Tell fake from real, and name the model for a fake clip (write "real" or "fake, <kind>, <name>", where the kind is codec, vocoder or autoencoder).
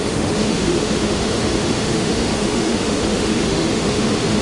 fake, autoencoder, DAC-VAE